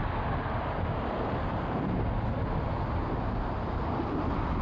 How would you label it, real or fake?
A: real